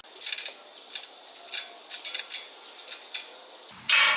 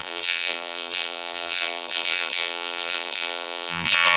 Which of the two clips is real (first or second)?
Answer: first